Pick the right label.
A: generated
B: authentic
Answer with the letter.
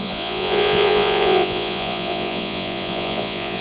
A